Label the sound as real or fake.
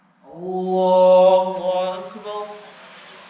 real